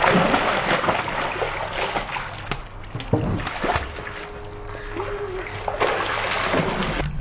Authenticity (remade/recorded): recorded